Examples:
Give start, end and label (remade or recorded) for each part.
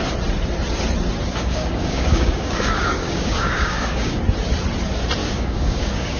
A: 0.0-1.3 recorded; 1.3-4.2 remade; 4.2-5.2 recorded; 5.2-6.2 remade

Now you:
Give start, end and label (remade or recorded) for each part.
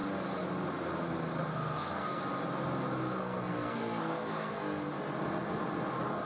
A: 0.0-1.5 recorded; 1.5-2.2 remade; 2.2-3.2 recorded; 3.2-4.5 remade; 4.5-6.3 recorded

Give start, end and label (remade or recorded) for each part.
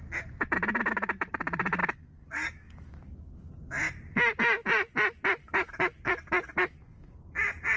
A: 0.0-1.8 recorded; 1.8-3.5 remade; 3.5-5.4 recorded; 5.4-7.1 remade; 7.1-7.8 recorded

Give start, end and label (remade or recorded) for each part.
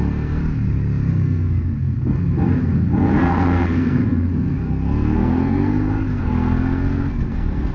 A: 0.0-0.4 remade; 0.4-1.1 recorded; 1.1-7.7 remade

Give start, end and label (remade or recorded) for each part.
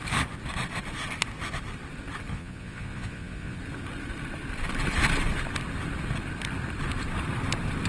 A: 0.0-2.3 recorded; 2.3-3.6 remade; 3.6-7.9 recorded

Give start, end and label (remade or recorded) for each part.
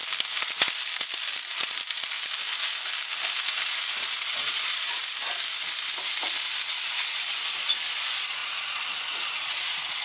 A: 0.0-3.9 recorded; 3.9-5.0 remade; 5.0-6.8 recorded; 6.8-10.0 remade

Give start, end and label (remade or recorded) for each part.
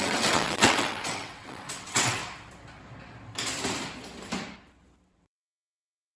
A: 0.0-2.2 remade; 2.2-5.1 recorded; 5.1-6.2 remade